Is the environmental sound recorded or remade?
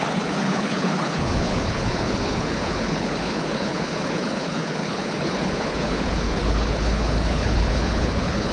remade